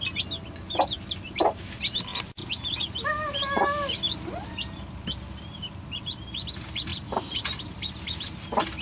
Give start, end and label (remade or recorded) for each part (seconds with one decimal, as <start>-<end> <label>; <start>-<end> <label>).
0.0-8.8 recorded